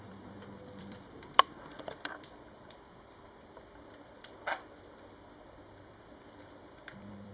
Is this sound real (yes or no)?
no